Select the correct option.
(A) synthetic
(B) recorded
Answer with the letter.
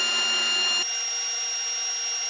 B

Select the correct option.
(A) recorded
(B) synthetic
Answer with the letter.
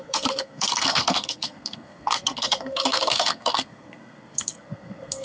B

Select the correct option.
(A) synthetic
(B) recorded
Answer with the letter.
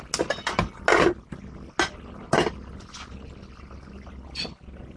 B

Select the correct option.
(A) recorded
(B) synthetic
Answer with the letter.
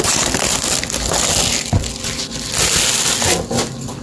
A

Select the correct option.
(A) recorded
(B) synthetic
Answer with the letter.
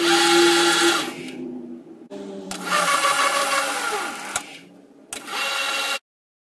A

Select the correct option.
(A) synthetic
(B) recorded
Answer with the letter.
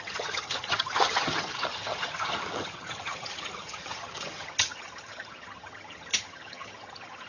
A